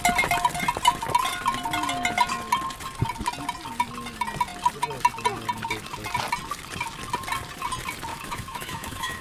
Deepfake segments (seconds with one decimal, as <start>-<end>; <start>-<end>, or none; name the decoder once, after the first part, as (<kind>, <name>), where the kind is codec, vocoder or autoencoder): 8.1-9.2 (autoencoder, DAC-VAE)